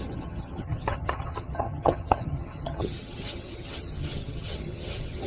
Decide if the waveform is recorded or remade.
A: remade